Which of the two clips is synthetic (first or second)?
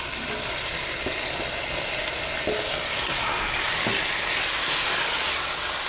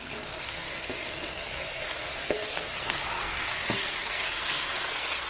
second